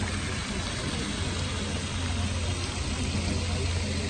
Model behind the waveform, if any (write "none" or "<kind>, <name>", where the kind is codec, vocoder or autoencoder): none